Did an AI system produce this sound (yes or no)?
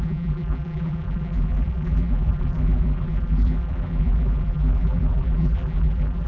yes